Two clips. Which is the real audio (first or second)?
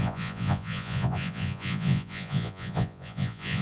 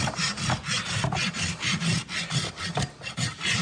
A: second